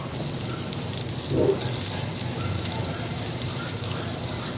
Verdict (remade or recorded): recorded